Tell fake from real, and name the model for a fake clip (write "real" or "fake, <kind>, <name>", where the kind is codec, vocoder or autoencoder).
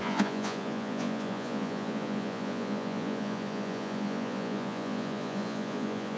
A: fake, vocoder, Vocos